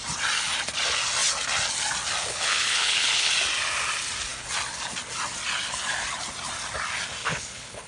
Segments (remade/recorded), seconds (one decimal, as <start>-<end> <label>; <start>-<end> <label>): 0.0-2.3 recorded; 2.3-3.3 remade; 3.3-7.2 recorded; 7.2-7.9 remade